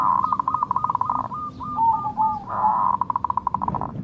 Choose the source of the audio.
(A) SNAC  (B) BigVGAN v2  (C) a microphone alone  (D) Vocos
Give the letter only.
B